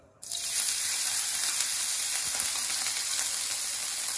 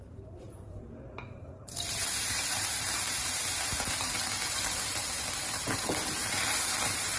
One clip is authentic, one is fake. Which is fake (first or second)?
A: second